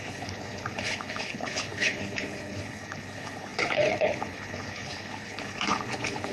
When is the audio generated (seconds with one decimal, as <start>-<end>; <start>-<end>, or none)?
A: 0.0-6.3